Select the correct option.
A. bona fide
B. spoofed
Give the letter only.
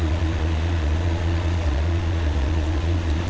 B